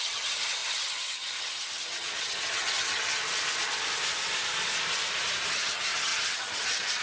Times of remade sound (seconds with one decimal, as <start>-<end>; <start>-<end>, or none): 0.0-3.2; 5.5-7.0